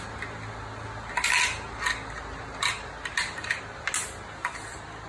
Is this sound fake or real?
real